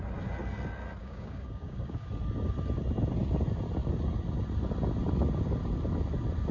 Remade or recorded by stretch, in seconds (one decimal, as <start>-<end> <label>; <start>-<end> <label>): 0.0-1.0 recorded; 1.0-2.1 remade; 2.1-6.5 recorded